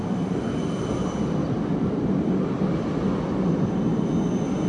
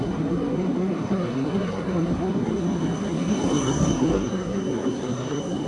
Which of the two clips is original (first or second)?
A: first